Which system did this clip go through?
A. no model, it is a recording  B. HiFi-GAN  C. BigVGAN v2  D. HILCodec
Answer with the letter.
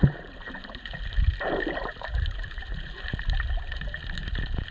C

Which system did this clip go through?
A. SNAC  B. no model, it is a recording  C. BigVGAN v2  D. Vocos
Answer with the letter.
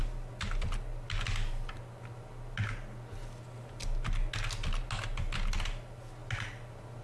B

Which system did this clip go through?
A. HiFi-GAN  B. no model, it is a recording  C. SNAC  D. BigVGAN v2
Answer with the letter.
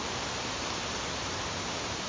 D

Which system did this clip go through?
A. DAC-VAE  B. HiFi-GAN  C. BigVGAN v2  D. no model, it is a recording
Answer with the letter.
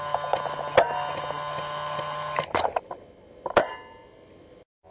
D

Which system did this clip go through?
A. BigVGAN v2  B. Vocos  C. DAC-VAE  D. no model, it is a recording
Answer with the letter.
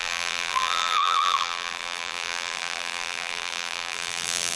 A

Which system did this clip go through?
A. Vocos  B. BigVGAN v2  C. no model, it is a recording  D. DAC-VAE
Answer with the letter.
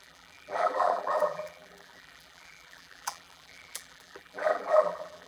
B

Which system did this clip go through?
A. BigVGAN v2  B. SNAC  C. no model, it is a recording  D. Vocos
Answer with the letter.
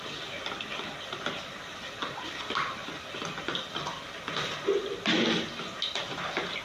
C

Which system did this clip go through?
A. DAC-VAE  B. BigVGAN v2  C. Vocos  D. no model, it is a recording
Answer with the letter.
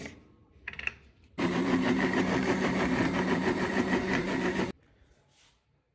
B